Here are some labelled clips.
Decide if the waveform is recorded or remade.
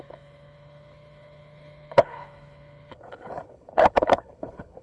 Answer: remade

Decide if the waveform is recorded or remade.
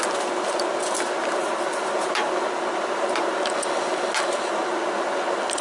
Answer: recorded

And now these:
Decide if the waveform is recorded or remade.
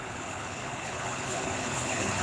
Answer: remade